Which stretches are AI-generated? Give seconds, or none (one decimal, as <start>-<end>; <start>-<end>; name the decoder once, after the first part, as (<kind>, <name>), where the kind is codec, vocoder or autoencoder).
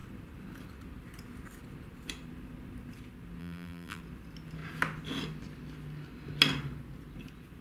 3.4-4.0 (vocoder, BigVGAN v2)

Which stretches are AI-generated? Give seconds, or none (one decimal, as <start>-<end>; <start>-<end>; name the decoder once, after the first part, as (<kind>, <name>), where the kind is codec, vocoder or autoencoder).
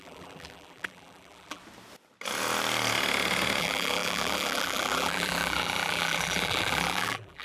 0.0-1.6 (vocoder, BigVGAN v2); 3.6-7.4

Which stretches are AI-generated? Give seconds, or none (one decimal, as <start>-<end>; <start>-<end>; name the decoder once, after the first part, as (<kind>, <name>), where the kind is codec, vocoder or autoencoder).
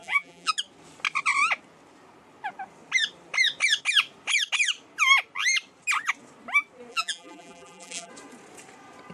0.0-0.5 (vocoder, BigVGAN v2); 6.9-8.1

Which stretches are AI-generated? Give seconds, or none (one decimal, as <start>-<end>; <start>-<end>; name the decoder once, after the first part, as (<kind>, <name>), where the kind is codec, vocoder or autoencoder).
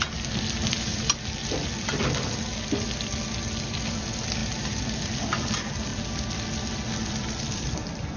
none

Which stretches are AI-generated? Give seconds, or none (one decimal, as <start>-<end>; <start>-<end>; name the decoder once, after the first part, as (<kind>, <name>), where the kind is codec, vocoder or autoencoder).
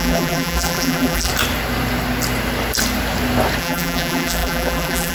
0.0-1.3 (vocoder, BigVGAN v2); 3.6-5.1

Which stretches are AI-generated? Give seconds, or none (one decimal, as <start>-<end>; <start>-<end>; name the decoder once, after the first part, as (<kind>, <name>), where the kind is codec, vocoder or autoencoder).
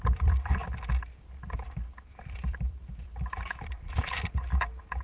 0.0-0.6 (vocoder, BigVGAN v2); 1.4-5.0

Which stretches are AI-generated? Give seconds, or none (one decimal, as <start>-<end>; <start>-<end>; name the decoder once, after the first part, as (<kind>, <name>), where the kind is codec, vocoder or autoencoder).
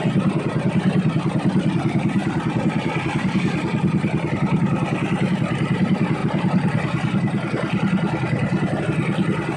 none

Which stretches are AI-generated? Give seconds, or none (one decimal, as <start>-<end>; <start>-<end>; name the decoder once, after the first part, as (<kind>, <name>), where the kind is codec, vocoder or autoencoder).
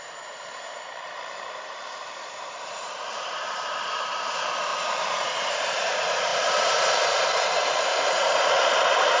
0.0-9.2 (vocoder, BigVGAN v2)